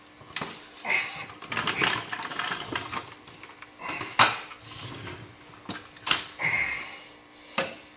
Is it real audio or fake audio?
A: real